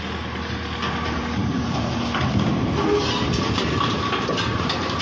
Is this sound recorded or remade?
recorded